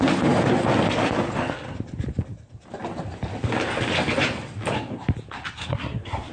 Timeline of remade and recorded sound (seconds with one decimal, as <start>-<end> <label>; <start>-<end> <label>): 0.0-5.6 recorded; 5.6-6.3 remade